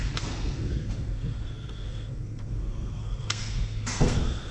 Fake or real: fake